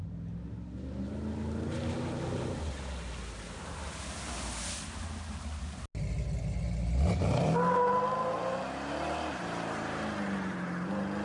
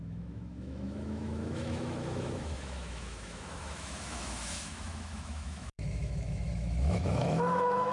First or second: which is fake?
second